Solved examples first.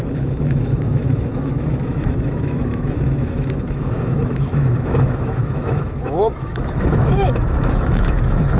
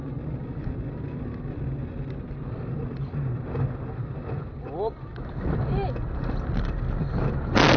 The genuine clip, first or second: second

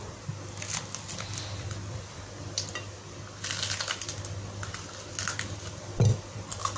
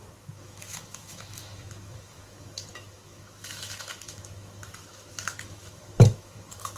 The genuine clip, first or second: first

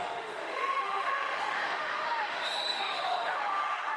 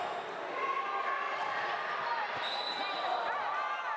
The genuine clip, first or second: second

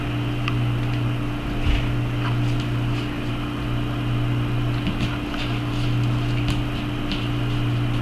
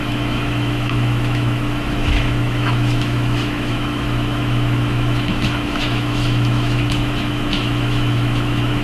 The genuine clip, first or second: first